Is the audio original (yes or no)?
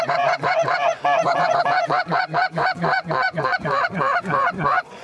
no